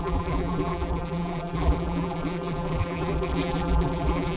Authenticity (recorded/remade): remade